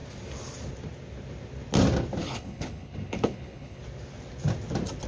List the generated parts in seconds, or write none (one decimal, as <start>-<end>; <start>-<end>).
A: 2.2-3.8